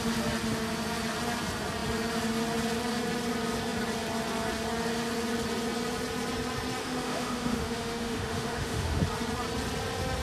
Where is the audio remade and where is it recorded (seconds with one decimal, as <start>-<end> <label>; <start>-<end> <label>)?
0.0-6.8 recorded; 6.8-9.0 remade; 9.0-10.2 recorded